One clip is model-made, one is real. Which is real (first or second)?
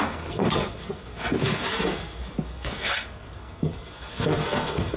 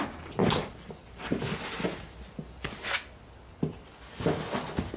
second